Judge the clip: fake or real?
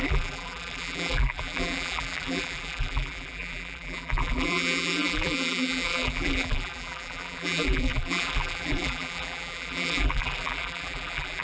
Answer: fake